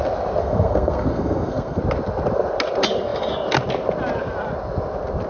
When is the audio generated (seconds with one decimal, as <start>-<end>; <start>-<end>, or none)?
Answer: 0.4-1.8